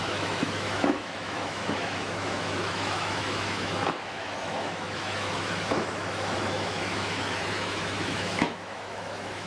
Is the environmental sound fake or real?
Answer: fake